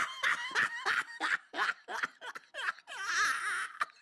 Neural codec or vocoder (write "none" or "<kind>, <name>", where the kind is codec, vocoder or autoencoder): none